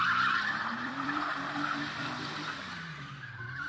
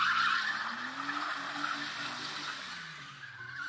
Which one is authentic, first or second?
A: second